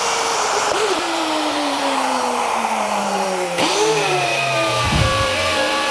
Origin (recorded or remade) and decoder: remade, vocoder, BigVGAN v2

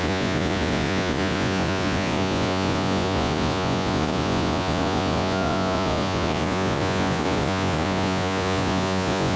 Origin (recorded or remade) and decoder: remade, vocoder, Vocos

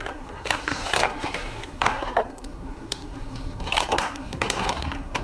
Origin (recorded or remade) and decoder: remade, codec, SNAC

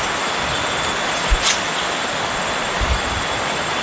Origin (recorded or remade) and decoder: recorded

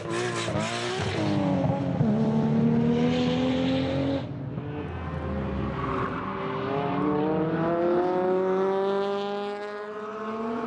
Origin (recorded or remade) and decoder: recorded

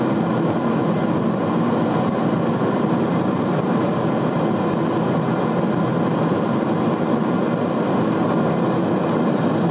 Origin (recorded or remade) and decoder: recorded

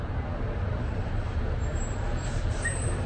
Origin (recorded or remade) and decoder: remade, vocoder, BigVGAN v2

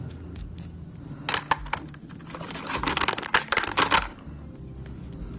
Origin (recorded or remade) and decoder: recorded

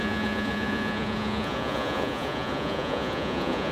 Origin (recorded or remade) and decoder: remade, vocoder, Vocos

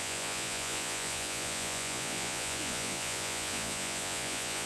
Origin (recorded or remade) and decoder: remade, vocoder, Vocos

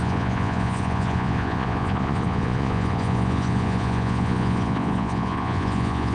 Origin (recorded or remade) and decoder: remade, vocoder, Vocos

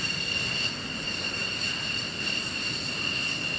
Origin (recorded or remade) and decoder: recorded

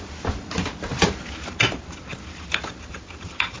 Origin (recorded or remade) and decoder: recorded